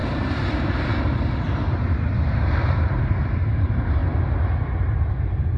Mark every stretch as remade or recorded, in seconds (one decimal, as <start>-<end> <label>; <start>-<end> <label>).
0.0-4.0 remade; 4.0-5.1 recorded; 5.1-5.6 remade